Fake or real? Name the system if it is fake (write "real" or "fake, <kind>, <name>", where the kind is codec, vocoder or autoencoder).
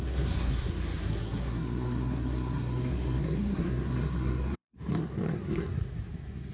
fake, codec, SNAC